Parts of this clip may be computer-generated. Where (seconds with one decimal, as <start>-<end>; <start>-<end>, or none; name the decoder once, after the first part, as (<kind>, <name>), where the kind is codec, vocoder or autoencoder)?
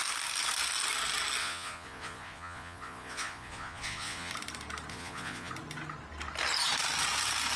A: 1.4-4.3 (vocoder, Vocos); 4.9-5.5